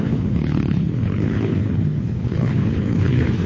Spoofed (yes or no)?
yes